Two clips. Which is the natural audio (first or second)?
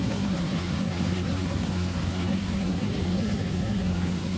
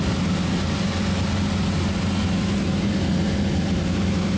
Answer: second